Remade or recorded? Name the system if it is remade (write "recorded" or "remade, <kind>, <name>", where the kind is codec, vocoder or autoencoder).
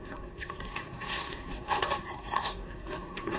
remade, codec, SNAC